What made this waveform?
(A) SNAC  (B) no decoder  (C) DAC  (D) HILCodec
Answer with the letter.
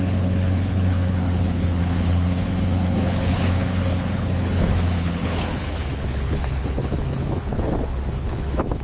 D